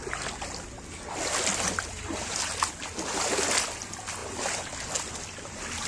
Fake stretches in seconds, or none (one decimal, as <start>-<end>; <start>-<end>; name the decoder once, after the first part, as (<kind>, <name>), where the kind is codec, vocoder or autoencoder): none

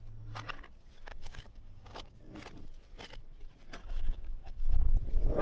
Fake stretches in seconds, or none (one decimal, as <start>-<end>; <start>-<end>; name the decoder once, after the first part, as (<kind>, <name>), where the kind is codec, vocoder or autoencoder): 1.1-2.2 (codec, DAC); 3.8-4.6

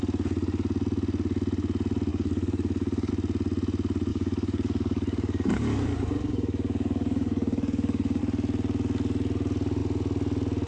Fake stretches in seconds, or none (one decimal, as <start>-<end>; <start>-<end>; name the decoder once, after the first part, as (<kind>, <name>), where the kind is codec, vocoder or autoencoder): 2.1-3.1 (codec, DAC); 4.1-8.2

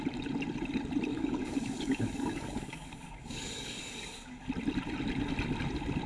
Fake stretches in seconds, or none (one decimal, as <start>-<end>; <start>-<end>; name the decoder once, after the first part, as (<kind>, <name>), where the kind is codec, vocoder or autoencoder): 1.1-4.5 (codec, DAC)

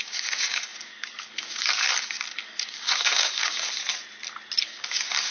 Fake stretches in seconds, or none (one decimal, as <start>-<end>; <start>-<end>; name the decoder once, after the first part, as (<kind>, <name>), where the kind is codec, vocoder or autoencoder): 0.0-3.8 (codec, DAC); 4.6-5.3

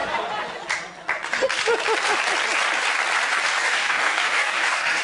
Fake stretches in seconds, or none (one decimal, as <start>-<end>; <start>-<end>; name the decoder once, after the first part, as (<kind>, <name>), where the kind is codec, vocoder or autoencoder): 3.6-5.0 (codec, DAC)

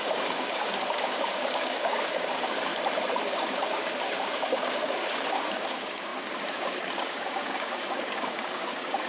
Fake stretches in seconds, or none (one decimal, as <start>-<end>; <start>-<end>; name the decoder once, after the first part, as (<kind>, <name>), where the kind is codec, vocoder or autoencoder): 0.0-2.7 (codec, DAC); 3.3-9.1